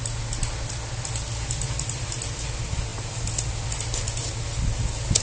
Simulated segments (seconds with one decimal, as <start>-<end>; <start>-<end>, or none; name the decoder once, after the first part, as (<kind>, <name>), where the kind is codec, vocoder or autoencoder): none